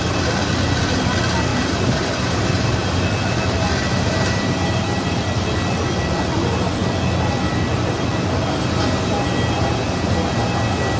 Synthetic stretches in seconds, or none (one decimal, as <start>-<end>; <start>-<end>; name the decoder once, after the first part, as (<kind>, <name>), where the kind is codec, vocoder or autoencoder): 1.5-3.0 (vocoder, BigVGAN v2); 3.9-5.2